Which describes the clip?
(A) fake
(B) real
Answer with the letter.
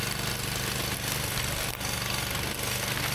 B